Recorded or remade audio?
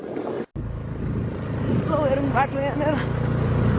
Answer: recorded